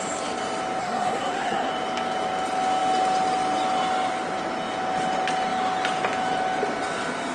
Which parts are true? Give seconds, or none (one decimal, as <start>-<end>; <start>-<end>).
0.0-0.8; 1.7-7.3